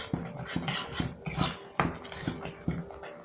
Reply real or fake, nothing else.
real